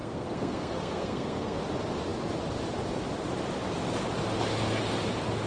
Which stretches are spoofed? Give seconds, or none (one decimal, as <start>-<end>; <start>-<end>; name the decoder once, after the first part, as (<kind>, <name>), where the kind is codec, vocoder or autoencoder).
0.0-1.6 (codec, SNAC)